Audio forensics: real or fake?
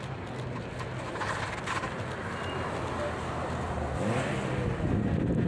real